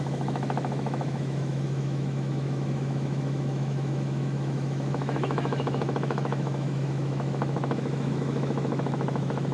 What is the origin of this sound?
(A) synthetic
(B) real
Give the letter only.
A